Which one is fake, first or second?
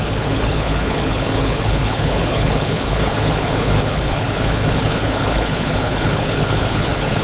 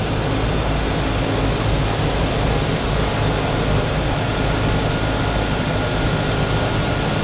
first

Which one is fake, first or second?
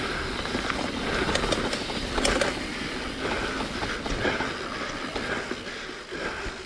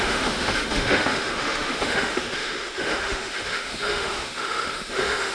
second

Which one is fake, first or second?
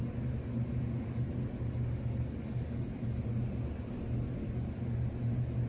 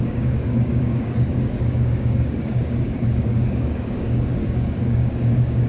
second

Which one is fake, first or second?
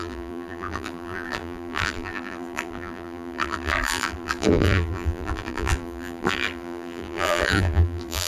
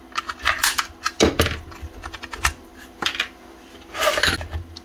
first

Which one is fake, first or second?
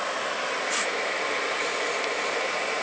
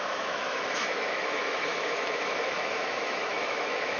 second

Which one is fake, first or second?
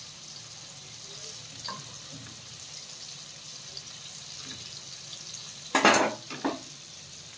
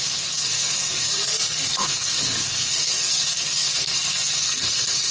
second